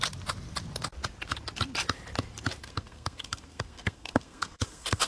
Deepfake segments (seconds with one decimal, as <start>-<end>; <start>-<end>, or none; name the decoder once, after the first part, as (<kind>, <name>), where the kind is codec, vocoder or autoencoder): 2.6-5.1 (codec, SNAC)